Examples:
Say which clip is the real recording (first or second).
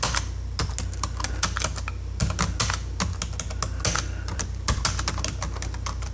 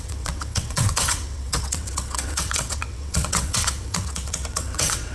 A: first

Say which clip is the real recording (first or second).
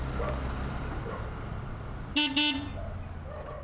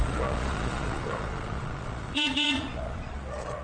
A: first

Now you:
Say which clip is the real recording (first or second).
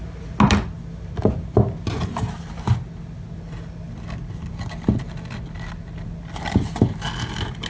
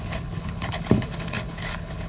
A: first